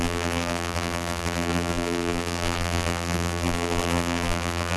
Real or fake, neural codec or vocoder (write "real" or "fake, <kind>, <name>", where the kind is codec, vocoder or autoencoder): fake, vocoder, BigVGAN v2